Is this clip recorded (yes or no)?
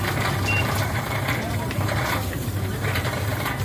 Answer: no